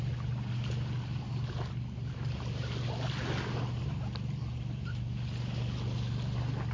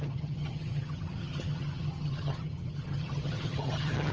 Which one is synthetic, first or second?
second